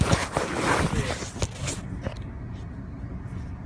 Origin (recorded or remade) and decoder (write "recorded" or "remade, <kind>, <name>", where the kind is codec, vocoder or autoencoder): recorded